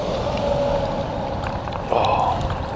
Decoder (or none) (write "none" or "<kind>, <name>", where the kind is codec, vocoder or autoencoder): none